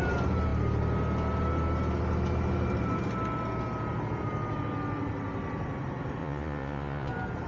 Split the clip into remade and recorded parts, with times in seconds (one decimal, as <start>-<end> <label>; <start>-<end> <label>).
0.0-6.2 recorded; 6.2-7.1 remade; 7.1-7.5 recorded